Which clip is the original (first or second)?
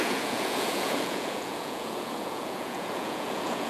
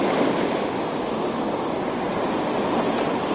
second